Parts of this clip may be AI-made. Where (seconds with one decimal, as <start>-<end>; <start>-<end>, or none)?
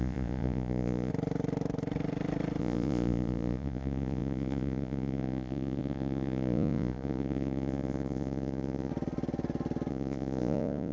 0.0-1.1; 2.6-8.9; 9.9-10.9